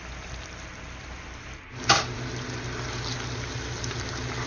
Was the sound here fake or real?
real